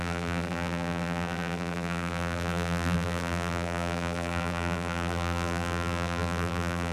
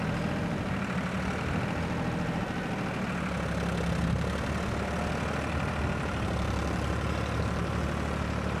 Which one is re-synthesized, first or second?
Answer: first